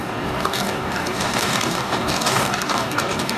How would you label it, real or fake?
fake